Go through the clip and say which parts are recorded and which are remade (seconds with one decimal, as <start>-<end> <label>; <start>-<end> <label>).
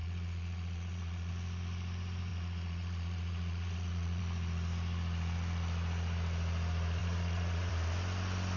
0.0-1.3 remade; 1.3-2.3 recorded; 2.3-4.2 remade; 4.2-7.0 recorded; 7.0-7.7 remade; 7.7-8.6 recorded